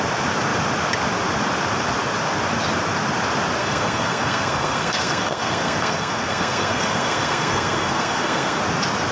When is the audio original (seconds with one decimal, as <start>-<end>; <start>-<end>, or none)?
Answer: 0.0-3.6; 8.6-9.1